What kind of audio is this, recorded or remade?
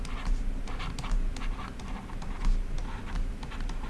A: recorded